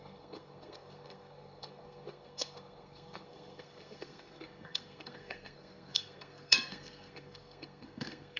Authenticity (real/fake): fake